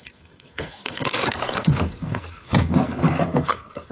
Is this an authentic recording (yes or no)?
no